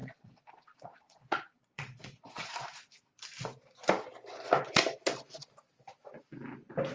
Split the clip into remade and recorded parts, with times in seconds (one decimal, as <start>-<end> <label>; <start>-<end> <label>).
0.0-2.5 remade; 2.5-6.9 recorded